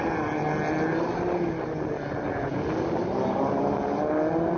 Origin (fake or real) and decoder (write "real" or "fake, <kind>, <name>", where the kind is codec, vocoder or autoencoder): real